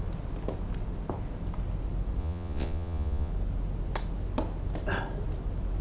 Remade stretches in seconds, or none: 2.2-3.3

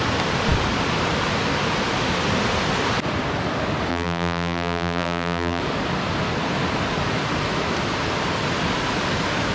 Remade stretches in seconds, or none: 3.9-5.6

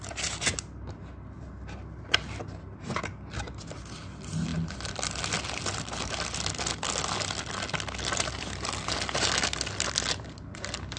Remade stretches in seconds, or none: none

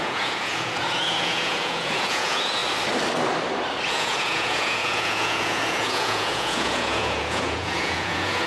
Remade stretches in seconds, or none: 0.0-2.6; 3.9-8.5

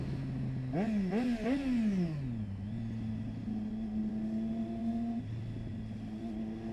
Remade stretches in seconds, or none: none

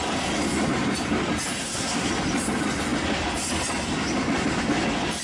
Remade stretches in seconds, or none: 1.6-2.1

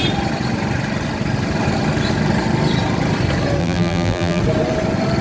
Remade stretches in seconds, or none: 3.6-4.4

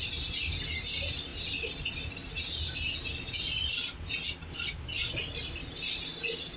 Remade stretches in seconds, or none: none